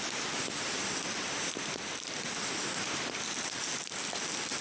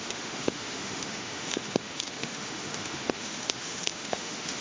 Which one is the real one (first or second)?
first